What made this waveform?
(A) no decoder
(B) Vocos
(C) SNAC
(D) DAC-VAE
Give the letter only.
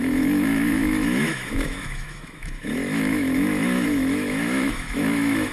D